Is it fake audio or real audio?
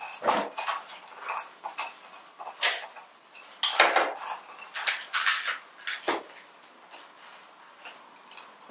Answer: real